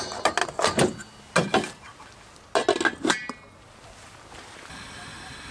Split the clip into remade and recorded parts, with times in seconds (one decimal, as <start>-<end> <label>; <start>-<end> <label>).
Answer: 0.0-5.5 recorded